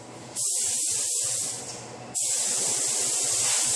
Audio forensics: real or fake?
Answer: real